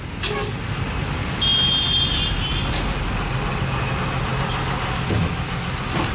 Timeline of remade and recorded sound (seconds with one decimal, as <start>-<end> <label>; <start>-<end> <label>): 0.0-6.1 recorded